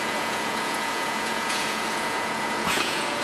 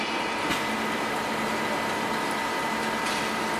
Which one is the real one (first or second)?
second